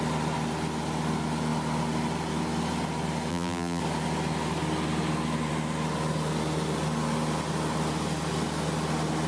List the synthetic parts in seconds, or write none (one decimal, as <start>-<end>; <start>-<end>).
3.3-3.8